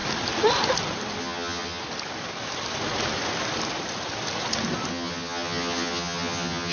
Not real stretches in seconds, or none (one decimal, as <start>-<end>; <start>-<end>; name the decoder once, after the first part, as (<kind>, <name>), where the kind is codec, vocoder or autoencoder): 1.2-1.8 (vocoder, HiFi-GAN); 4.9-6.7